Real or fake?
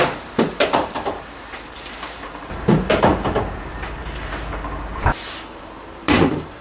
fake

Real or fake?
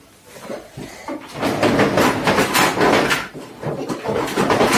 real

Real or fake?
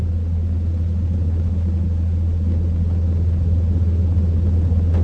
real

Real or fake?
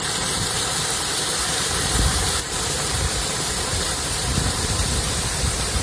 fake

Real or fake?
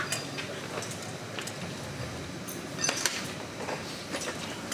real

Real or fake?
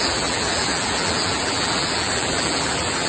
fake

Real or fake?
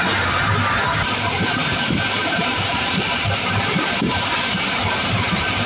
fake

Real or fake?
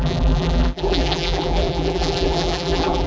fake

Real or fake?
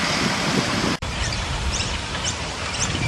fake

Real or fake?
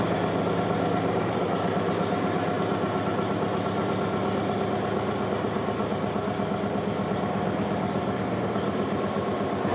real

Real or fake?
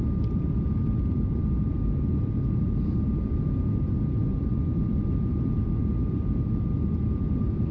fake